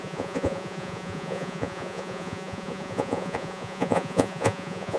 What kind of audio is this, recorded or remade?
remade